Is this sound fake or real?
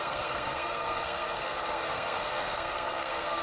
fake